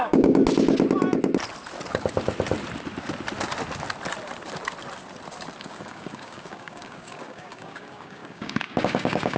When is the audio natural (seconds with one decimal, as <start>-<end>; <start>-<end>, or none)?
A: 0.4-5.6